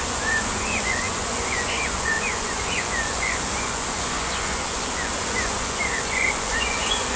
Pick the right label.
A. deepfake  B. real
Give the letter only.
A